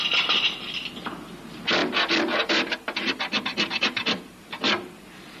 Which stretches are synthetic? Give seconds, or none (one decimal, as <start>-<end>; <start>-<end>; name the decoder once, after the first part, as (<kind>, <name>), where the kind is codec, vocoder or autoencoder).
none